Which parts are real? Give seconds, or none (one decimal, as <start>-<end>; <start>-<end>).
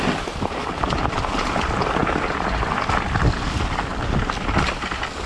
0.0-5.3